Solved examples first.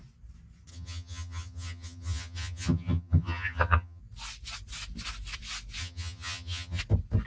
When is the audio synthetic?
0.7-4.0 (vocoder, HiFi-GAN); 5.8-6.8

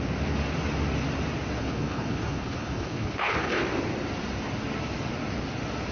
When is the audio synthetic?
1.6-3.6 (codec, HILCodec)